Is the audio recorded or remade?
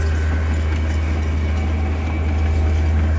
recorded